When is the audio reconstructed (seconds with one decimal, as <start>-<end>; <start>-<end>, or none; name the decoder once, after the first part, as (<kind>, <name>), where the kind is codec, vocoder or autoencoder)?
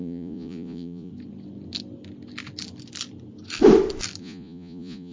0.0-1.1 (vocoder, Vocos); 4.2-5.1